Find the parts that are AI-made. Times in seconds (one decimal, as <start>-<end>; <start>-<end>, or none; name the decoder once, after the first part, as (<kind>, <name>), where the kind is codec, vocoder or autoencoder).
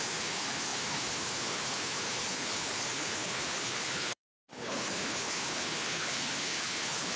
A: 0.0-7.2 (codec, HILCodec)